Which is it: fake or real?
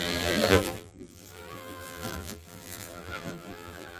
fake